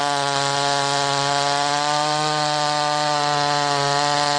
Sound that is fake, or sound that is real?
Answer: real